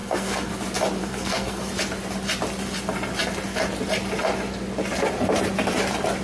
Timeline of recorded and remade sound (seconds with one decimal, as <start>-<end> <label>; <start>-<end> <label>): 0.0-0.5 remade; 0.5-1.0 recorded; 1.0-1.6 remade; 1.6-6.2 recorded